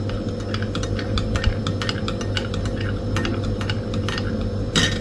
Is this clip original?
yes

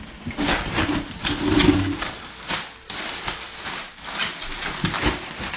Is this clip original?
yes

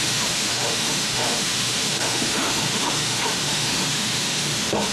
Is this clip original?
no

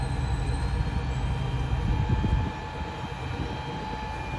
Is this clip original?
yes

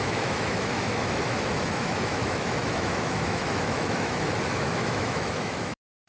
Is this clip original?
no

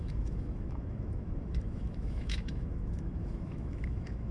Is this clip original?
no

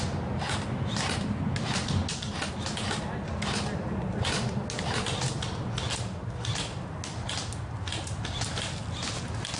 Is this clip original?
yes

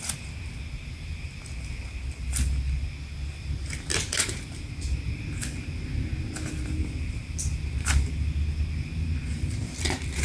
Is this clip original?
yes